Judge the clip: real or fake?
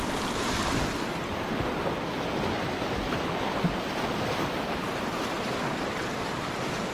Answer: real